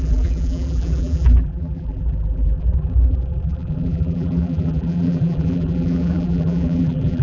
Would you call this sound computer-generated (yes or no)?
yes